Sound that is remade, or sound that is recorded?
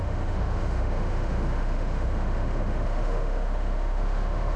remade